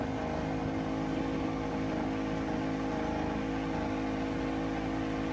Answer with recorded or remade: recorded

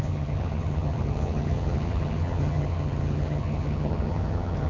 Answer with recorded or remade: remade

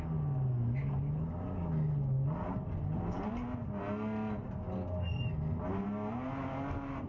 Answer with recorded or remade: recorded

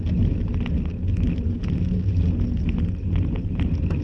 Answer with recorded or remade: recorded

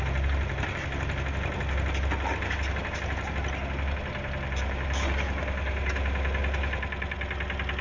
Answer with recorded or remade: recorded